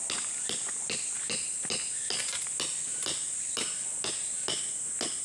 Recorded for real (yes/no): yes